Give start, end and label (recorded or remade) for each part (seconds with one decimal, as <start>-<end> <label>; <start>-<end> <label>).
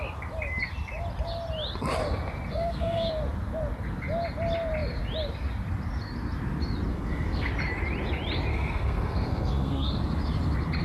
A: 0.0-2.5 recorded; 2.5-3.1 remade; 3.1-6.9 recorded; 6.9-7.5 remade; 7.5-8.5 recorded; 8.5-9.9 remade; 9.9-10.8 recorded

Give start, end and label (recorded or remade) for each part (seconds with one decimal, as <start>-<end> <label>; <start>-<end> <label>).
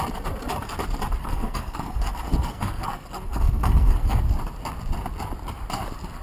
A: 0.0-1.2 recorded; 1.2-4.2 remade; 4.2-6.2 recorded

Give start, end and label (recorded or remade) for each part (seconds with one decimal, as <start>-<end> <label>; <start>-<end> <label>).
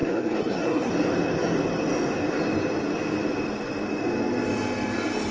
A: 0.0-0.9 remade; 0.9-5.3 recorded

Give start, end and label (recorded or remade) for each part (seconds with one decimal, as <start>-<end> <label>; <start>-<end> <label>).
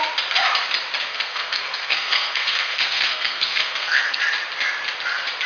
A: 0.0-1.1 recorded; 1.1-4.2 remade; 4.2-5.5 recorded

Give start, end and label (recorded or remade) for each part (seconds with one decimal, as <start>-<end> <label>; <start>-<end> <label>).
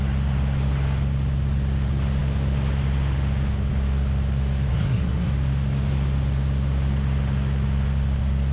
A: 0.0-4.7 recorded; 4.7-5.3 remade; 5.3-8.5 recorded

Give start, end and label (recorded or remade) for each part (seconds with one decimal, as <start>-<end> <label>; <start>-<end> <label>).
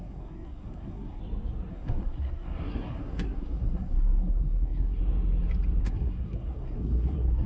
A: 0.0-1.2 remade; 1.2-1.7 recorded; 1.7-5.0 remade; 5.0-5.8 recorded; 5.8-7.5 remade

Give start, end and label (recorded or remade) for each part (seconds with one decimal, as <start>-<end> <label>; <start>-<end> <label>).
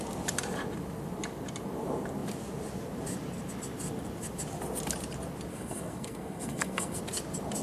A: 0.0-5.5 recorded; 5.5-7.0 remade; 7.0-7.6 recorded